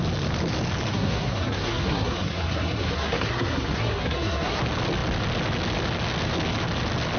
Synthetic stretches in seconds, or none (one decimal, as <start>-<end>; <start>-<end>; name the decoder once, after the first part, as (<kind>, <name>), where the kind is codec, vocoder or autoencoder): 0.9-4.6 (codec, SNAC)